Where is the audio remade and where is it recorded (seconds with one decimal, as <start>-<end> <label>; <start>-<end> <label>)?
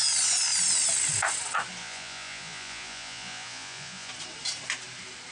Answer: 0.0-1.8 recorded; 1.8-4.1 remade; 4.1-5.3 recorded